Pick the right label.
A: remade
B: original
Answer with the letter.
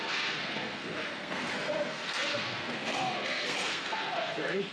A